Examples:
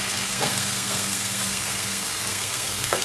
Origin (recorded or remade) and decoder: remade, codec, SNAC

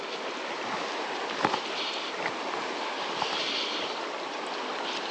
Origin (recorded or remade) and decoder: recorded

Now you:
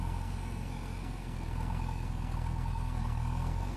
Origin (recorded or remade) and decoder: remade, codec, SNAC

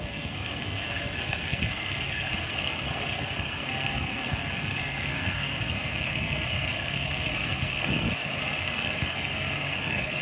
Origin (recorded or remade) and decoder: remade, codec, SNAC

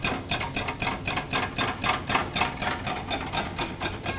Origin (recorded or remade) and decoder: recorded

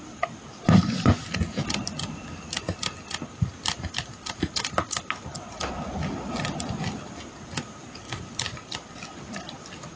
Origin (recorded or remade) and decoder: recorded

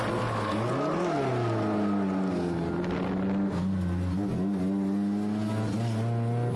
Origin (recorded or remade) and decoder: recorded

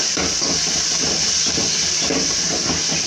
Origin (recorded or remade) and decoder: recorded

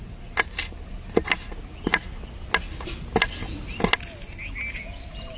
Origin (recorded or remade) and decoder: recorded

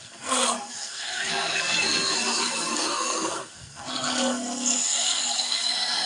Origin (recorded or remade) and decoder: remade, codec, SNAC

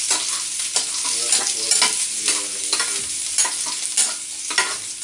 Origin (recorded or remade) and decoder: recorded